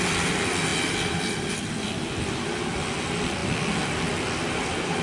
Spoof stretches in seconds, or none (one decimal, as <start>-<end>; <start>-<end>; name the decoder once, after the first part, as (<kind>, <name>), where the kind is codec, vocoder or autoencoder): none